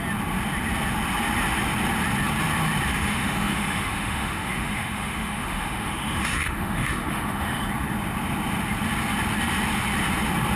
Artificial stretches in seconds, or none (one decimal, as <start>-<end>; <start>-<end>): 2.9-7.6